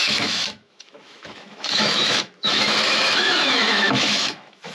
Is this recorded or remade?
remade